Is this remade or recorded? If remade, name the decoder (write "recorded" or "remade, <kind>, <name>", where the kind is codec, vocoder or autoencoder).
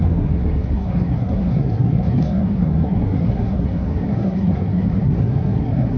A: remade, codec, SNAC